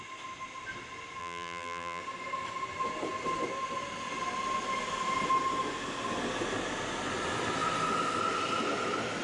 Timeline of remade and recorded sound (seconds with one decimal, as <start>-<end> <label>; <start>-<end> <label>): 0.0-1.2 recorded; 1.2-2.0 remade; 2.0-9.2 recorded